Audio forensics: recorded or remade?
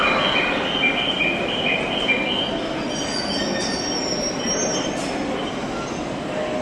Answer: recorded